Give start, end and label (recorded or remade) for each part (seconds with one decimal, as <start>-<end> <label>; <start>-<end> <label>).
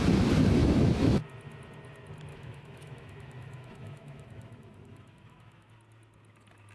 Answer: 0.0-0.6 recorded; 0.6-1.2 remade; 1.2-2.3 recorded; 2.3-5.7 remade; 5.7-6.7 recorded